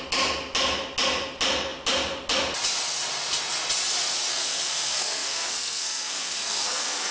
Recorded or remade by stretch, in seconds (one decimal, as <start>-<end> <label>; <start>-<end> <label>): 0.0-4.3 recorded; 4.3-7.1 remade